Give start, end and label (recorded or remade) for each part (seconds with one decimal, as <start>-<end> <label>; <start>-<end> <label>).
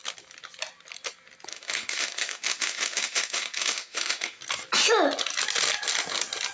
0.0-1.5 recorded; 1.5-4.4 remade; 4.4-6.5 recorded